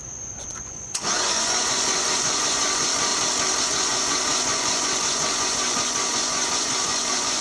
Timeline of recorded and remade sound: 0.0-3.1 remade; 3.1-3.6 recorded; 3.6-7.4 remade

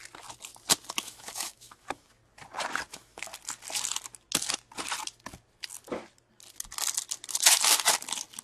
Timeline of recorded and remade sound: 0.0-1.0 recorded; 1.0-2.2 remade; 2.2-2.9 recorded; 2.9-3.3 remade; 3.3-8.4 recorded